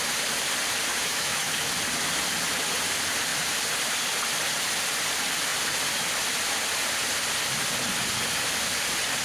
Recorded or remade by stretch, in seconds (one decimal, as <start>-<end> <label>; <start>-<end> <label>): 0.0-0.9 recorded; 0.9-1.7 remade; 1.7-9.2 recorded